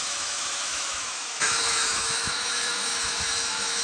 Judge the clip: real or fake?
fake